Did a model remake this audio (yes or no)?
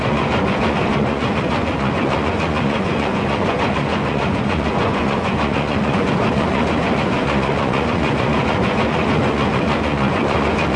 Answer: yes